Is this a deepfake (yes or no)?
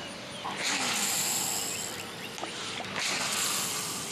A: no